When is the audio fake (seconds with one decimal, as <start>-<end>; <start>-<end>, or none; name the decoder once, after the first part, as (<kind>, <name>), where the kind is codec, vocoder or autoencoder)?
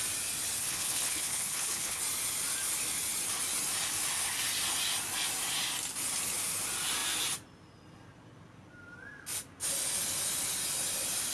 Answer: 0.6-2.0 (codec, HILCodec)